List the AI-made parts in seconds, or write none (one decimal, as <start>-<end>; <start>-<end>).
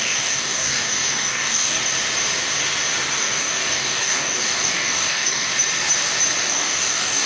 0.0-1.8; 3.2-5.5; 6.4-7.3